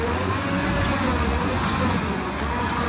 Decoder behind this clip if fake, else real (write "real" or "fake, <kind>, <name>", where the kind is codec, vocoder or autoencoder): fake, vocoder, Vocos